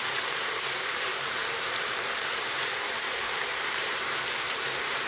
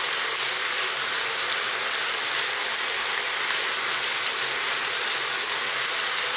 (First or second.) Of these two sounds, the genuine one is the second